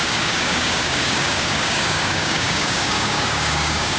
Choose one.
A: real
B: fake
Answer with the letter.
B